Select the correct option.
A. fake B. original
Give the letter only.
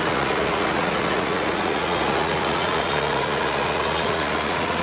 A